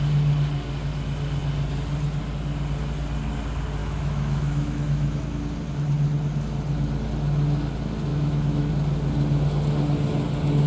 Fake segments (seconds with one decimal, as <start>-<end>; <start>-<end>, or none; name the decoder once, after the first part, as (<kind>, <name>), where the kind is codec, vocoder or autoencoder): 3.8-5.2 (autoencoder, DAC-VAE); 8.1-8.7